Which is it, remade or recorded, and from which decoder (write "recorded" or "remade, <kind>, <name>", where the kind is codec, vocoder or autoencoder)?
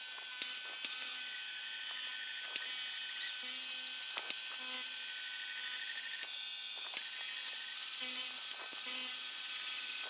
recorded